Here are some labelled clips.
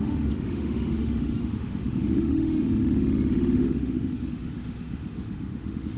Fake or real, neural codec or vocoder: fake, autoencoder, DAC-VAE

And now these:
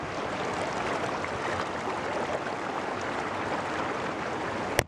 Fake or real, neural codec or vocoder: real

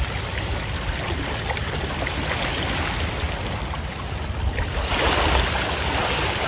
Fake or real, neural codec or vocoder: real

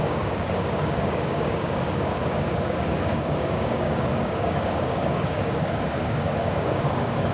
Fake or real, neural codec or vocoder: fake, codec, DAC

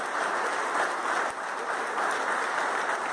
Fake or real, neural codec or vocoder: real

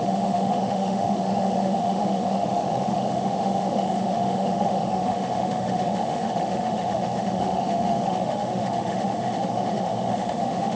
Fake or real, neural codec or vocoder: fake, autoencoder, DAC-VAE